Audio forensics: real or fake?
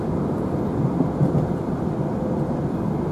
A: fake